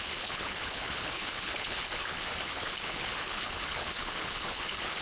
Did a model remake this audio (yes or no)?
yes